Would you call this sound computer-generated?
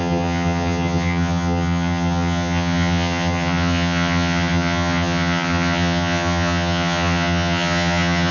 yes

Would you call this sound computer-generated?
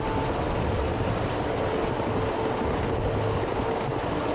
no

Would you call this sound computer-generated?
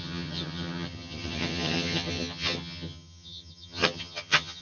yes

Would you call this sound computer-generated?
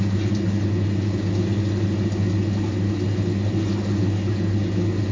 no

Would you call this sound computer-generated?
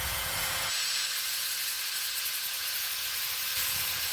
yes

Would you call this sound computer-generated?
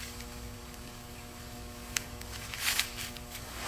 yes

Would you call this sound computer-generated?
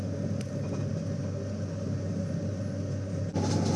no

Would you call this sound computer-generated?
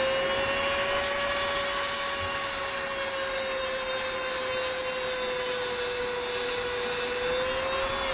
no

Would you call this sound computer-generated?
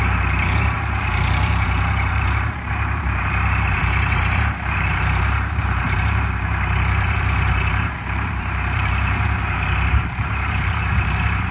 yes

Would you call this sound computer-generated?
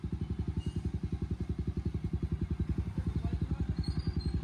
no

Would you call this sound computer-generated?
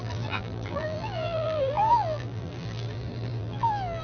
yes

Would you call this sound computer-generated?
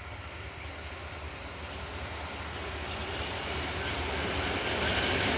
no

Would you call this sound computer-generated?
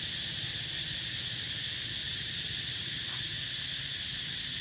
no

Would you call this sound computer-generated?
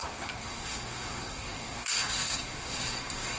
yes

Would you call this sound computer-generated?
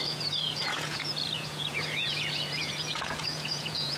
yes